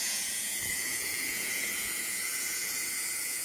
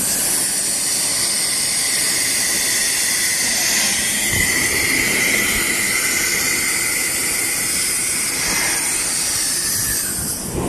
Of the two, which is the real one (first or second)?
second